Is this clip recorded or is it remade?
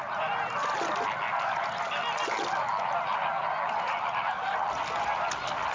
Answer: recorded